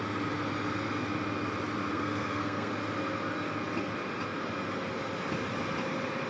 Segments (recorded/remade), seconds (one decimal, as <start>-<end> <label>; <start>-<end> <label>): 0.0-1.9 recorded; 1.9-2.7 remade; 2.7-6.3 recorded